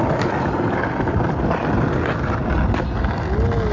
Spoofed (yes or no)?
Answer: no